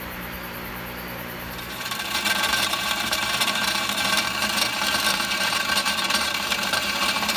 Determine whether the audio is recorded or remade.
remade